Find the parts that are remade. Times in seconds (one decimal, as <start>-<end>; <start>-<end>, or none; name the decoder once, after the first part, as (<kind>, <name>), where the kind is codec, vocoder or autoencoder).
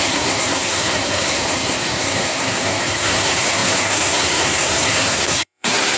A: 0.0-6.0 (codec, SNAC)